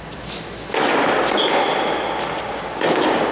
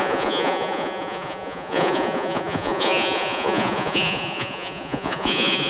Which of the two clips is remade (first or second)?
second